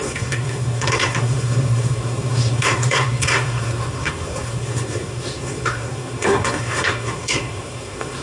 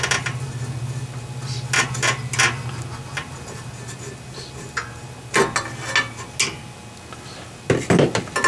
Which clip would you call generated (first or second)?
first